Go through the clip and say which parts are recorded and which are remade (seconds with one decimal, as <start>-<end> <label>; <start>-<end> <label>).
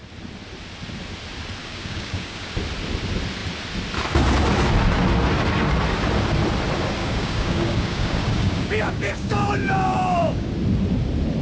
0.0-1.6 recorded; 1.6-2.5 remade; 2.5-7.0 recorded; 7.0-10.5 remade; 10.5-11.4 recorded